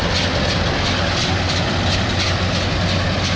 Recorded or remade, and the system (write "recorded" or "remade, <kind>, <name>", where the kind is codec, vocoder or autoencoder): recorded